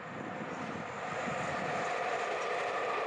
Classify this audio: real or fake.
real